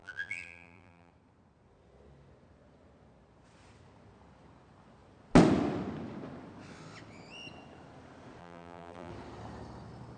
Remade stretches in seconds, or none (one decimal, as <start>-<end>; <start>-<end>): 0.0-1.1; 8.4-9.1